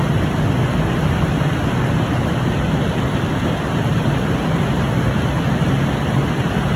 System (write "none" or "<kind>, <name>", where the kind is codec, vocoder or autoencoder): none